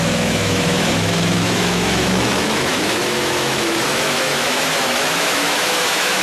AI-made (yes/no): yes